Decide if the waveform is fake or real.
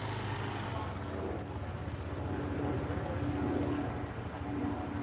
real